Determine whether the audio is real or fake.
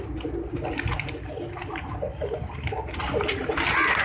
real